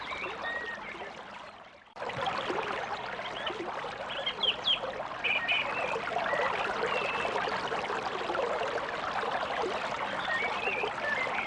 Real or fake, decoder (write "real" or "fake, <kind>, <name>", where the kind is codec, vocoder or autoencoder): fake, vocoder, BigVGAN v2